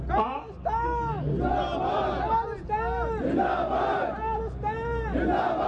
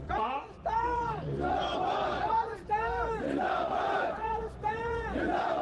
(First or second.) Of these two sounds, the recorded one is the first